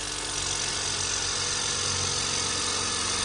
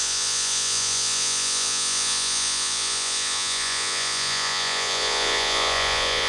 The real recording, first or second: first